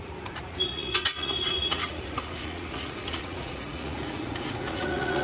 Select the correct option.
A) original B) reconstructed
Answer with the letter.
B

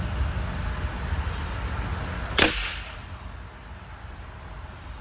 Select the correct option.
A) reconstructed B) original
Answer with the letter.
B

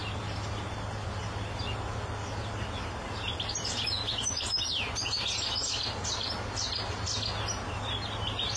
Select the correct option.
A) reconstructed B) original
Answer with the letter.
B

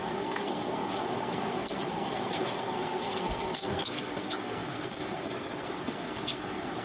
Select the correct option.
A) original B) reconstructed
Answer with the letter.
B